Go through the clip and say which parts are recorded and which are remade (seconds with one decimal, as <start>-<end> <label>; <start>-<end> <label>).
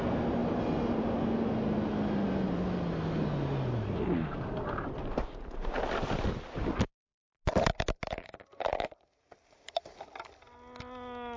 0.0-11.4 recorded